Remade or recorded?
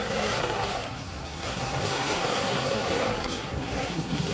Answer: remade